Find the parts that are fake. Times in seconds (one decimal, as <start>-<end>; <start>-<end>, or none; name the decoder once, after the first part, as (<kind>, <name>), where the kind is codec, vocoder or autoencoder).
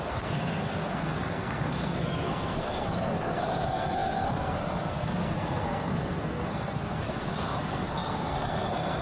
0.0-9.0 (codec, SNAC)